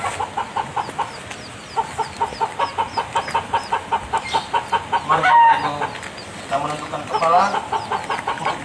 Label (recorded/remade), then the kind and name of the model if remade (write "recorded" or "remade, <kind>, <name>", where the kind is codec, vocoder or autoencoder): recorded